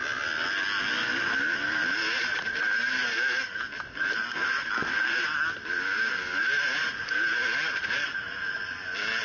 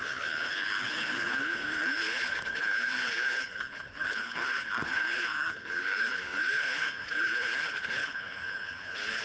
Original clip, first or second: first